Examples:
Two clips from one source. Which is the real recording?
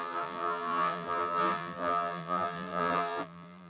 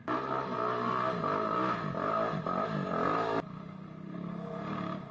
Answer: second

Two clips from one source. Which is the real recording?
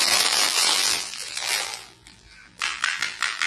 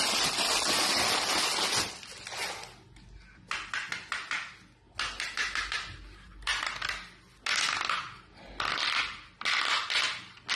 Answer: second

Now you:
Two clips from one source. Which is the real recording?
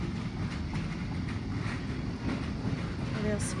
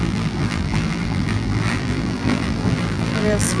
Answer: first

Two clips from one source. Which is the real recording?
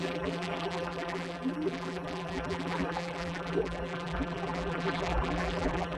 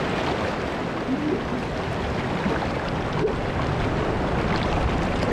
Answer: second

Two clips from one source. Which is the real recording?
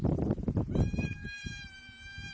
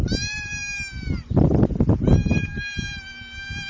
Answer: second